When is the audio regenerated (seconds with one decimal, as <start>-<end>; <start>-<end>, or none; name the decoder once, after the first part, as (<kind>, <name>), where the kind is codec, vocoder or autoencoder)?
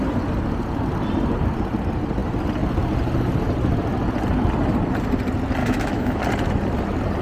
5.6-6.2 (autoencoder, DAC-VAE)